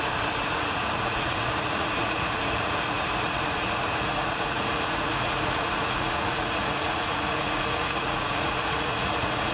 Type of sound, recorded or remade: remade